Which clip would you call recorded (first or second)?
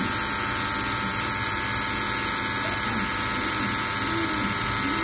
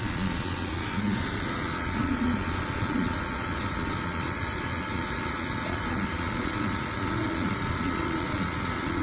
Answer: first